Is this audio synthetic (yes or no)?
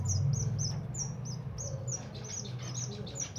no